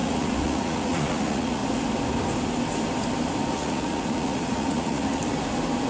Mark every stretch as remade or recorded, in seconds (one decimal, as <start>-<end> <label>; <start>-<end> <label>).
0.0-1.6 remade; 1.6-3.5 recorded; 3.5-5.2 remade; 5.2-5.9 recorded